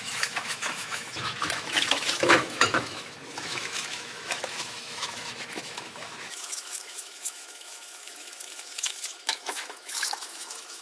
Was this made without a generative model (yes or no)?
no